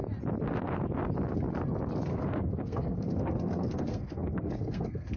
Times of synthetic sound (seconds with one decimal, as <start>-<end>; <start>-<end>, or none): 2.1-5.2